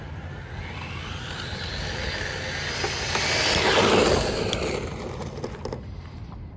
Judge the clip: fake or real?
real